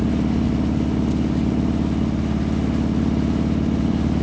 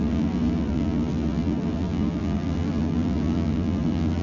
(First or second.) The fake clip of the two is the second